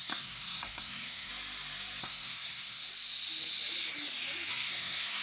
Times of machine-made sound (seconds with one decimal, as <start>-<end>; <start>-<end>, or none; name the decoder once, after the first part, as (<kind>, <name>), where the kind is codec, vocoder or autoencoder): 0.0-1.3 (codec, SNAC); 2.0-2.9; 4.5-5.2